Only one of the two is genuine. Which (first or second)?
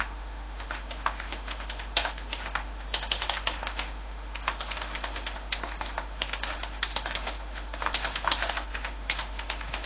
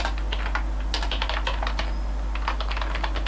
second